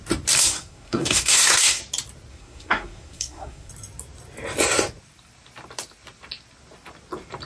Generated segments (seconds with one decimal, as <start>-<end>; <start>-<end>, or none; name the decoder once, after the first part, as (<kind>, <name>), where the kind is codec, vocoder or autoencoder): 0.4-1.8 (codec, SNAC); 2.3-3.7

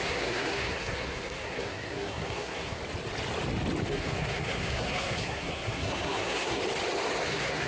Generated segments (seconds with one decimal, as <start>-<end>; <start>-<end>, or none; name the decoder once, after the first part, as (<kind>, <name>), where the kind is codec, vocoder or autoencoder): 0.0-2.8 (codec, SNAC); 3.8-6.6; 7.3-7.7

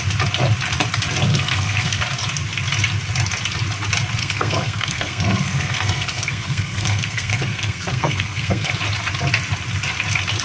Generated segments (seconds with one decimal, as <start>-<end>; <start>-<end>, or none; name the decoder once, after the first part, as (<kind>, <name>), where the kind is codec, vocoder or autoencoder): 1.3-2.0 (codec, SNAC); 4.2-8.7